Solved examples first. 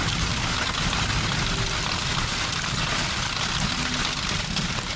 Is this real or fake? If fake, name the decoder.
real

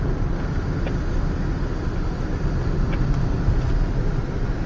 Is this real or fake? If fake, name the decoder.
real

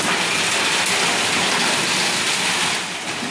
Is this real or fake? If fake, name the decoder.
real